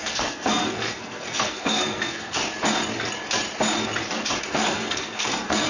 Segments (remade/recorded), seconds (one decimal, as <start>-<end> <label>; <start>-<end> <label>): 0.0-2.4 remade; 2.4-4.4 recorded; 4.4-5.7 remade